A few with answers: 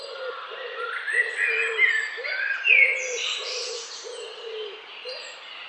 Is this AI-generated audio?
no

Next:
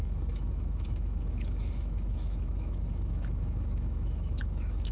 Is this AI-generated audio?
yes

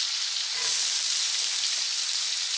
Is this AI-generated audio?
no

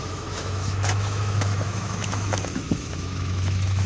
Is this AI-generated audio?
yes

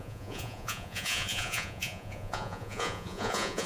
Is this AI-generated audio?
yes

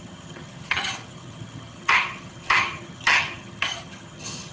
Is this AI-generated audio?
yes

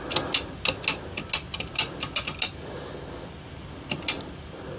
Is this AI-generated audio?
no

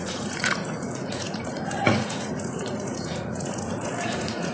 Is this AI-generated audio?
yes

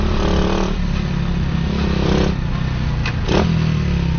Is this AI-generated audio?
no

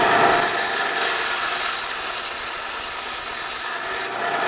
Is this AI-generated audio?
no